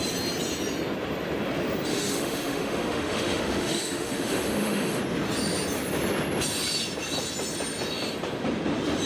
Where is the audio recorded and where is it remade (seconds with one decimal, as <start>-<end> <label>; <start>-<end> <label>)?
0.0-1.9 recorded; 1.9-5.0 remade; 5.0-9.1 recorded